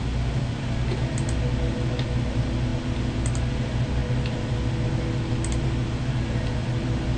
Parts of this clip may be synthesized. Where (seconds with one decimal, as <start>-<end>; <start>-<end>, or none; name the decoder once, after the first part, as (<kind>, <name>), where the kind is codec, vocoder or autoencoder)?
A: none